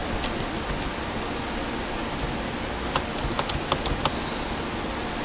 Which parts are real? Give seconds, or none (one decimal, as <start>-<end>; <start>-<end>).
3.1-5.2